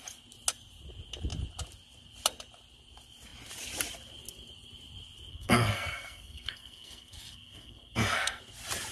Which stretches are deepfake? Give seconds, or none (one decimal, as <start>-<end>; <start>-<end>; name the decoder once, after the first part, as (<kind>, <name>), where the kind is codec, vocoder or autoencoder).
5.3-8.4 (codec, SNAC)

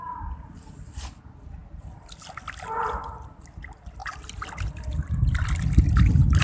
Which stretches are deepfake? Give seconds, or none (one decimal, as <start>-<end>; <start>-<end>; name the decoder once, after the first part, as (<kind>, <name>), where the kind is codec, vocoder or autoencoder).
4.0-6.0 (vocoder, BigVGAN v2)

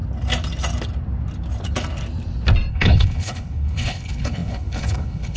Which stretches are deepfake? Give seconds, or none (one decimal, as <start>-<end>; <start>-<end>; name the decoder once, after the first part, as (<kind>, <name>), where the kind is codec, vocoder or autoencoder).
2.7-5.4 (codec, HILCodec)

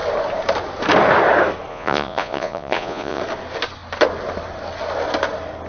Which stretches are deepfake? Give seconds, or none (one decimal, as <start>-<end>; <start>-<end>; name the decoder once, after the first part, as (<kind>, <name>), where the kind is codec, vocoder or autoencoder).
1.7-3.2 (vocoder, Vocos)

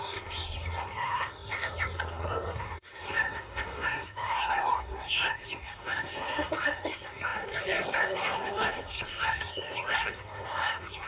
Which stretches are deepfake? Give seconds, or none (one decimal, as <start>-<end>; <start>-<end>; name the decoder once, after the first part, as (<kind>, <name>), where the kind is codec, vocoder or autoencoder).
0.0-11.1 (codec, SNAC)

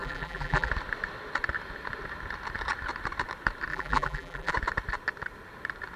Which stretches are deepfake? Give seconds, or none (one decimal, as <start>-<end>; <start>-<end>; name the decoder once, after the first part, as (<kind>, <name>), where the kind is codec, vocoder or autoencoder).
0.0-0.7 (vocoder, BigVGAN v2); 3.7-4.5

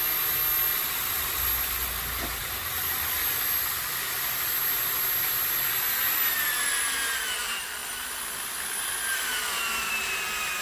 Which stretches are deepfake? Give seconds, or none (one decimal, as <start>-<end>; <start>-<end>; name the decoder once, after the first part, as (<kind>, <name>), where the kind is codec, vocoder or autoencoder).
7.8-9.9 (vocoder, BigVGAN v2)

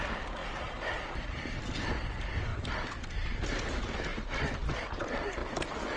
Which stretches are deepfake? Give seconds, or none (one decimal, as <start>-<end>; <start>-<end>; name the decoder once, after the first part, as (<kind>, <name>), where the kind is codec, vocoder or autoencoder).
4.1-4.9 (vocoder, BigVGAN v2)